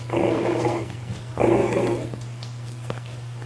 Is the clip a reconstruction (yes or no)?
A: yes